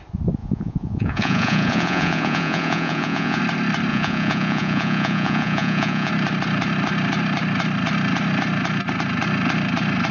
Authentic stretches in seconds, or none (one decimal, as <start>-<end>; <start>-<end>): 0.0-0.4; 3.4-3.9; 6.1-10.1